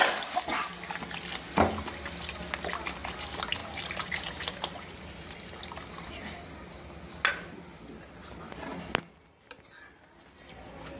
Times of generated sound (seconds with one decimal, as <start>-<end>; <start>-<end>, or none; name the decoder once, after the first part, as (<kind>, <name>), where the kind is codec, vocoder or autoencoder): none